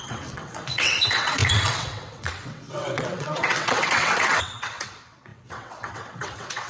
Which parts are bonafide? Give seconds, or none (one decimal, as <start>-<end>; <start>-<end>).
none